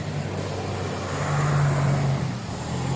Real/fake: real